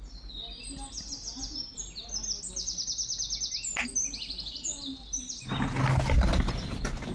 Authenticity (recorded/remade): recorded